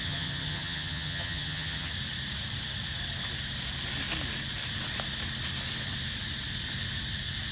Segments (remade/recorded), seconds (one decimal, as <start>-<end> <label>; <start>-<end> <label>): 0.0-1.9 remade; 1.9-7.5 recorded